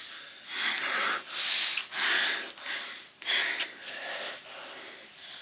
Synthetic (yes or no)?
no